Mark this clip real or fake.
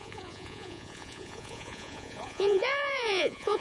fake